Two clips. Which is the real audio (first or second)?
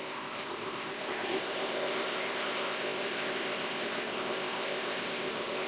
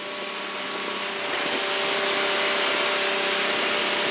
second